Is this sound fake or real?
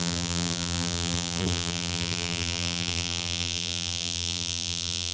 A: fake